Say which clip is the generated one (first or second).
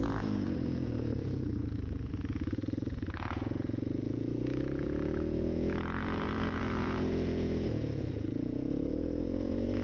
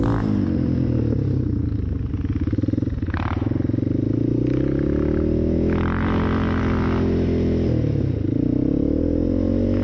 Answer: first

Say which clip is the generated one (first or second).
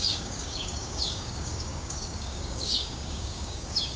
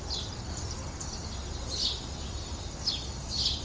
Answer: first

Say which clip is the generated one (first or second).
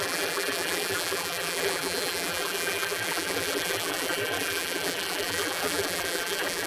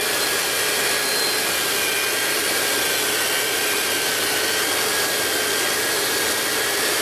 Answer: first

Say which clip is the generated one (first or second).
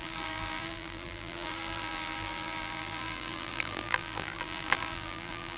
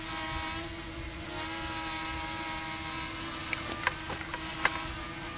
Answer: first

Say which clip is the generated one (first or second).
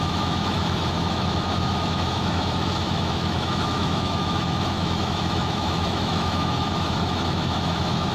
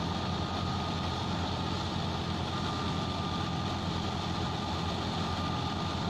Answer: first